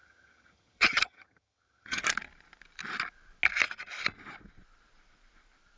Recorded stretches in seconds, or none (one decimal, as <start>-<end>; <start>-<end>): 2.0-5.8